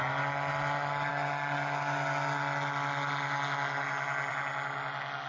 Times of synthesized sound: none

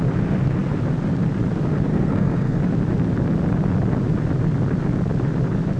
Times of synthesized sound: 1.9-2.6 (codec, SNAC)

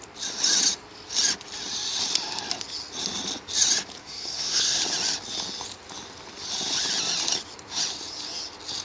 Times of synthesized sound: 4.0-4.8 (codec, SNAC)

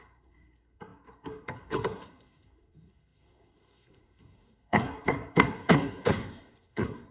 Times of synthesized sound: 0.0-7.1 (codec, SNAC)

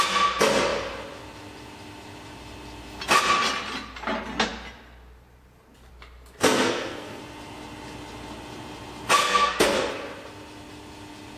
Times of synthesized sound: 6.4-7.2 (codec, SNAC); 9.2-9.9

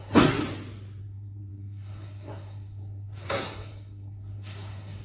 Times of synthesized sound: 0.0-0.4 (codec, SNAC); 1.0-5.0

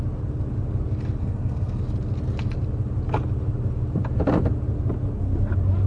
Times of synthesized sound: 1.2-1.8 (codec, SNAC)